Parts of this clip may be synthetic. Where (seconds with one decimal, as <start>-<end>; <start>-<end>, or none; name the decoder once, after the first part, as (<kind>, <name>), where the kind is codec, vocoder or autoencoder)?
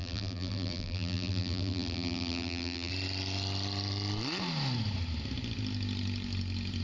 0.0-2.9 (vocoder, BigVGAN v2)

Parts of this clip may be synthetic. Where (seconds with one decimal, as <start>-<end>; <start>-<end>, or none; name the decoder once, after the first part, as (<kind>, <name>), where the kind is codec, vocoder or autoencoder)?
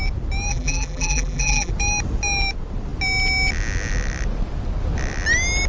0.5-1.7 (vocoder, BigVGAN v2)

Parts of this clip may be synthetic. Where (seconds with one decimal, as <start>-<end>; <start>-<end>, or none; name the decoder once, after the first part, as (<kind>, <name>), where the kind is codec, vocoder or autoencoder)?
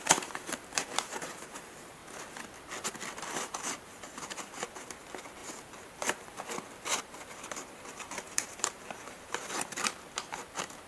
0.0-2.0 (vocoder, BigVGAN v2); 3.1-10.9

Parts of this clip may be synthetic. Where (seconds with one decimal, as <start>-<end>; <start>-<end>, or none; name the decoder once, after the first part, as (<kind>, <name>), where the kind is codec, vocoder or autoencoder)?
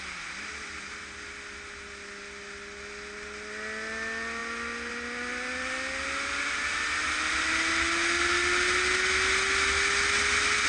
none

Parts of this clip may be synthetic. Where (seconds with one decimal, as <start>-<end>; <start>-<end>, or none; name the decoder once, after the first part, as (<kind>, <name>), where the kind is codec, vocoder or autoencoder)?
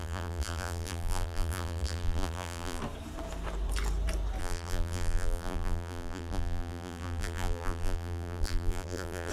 0.0-2.8 (vocoder, BigVGAN v2); 4.4-9.3